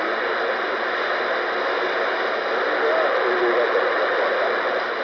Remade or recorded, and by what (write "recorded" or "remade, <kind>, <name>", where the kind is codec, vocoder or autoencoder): recorded